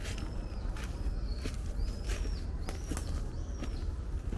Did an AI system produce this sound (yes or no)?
no